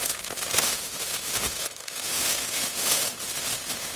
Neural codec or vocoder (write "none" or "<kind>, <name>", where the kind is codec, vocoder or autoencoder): autoencoder, DAC-VAE